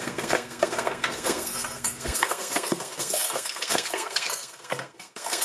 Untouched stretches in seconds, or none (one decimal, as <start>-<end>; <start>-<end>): none